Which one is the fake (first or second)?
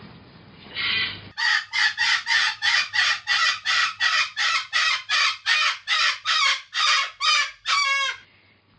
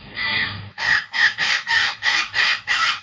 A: second